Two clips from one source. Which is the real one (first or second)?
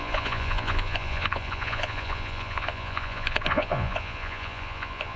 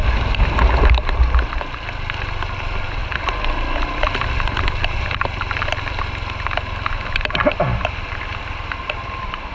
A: second